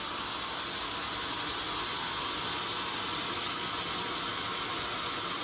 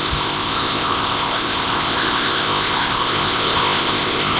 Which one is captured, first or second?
first